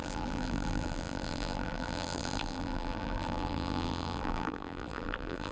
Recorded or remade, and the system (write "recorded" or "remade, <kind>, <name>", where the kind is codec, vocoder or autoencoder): remade, vocoder, BigVGAN v2